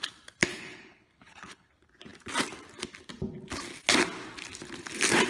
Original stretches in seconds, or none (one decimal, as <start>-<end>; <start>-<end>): 0.0-0.5; 1.7-5.3